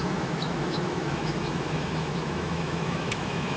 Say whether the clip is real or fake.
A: fake